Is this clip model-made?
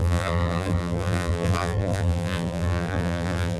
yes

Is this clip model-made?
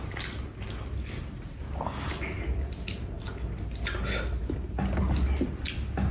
no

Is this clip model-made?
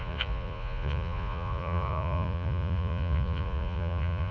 yes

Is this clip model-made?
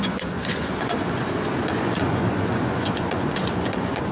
yes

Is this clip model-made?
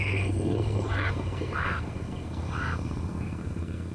yes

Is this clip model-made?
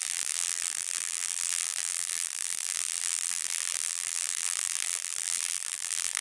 yes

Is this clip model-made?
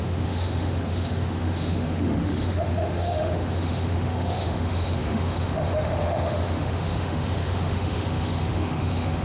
yes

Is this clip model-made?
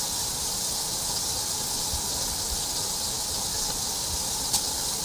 no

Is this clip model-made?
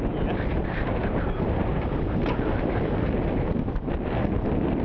no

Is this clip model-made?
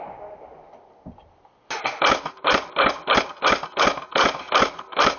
no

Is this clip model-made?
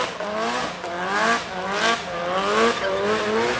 no